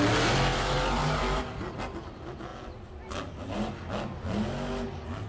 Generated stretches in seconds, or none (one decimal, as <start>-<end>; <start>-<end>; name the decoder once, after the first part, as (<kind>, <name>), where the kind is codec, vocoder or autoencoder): 0.5-1.4 (vocoder, BigVGAN v2)